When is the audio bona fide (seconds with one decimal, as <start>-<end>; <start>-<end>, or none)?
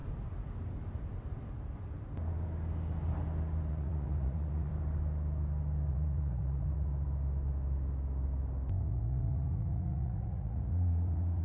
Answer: 0.0-3.7; 4.7-5.9; 6.9-8.8